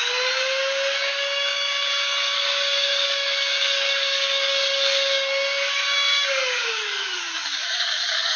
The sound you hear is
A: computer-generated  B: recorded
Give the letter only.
A